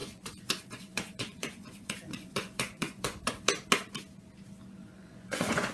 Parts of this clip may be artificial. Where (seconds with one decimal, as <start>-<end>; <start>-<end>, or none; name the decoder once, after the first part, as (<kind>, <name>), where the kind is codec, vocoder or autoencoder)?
0.0-3.4 (vocoder, Vocos); 4.8-5.7